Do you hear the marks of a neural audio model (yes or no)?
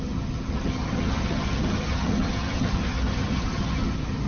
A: yes